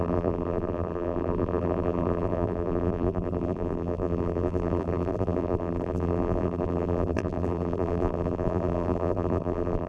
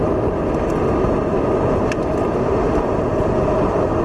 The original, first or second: second